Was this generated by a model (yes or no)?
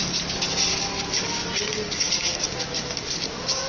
no